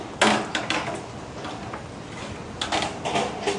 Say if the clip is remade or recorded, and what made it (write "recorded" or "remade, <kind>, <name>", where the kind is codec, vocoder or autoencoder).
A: recorded